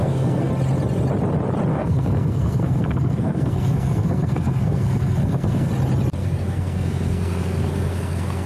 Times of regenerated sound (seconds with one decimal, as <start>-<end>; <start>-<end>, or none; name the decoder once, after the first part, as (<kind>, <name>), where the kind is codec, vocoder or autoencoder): 0.0-0.5 (codec, SNAC); 1.7-5.7; 6.2-8.5